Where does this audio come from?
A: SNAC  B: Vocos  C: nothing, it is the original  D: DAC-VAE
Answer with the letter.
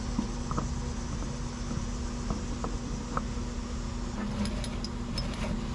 C